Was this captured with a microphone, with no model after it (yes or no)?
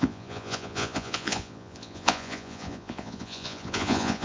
no